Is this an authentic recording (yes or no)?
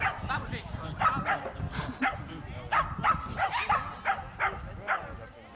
yes